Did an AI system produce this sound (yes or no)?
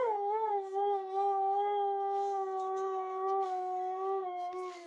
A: yes